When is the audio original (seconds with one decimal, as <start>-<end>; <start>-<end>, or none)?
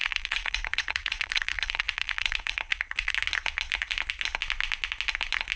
3.1-5.6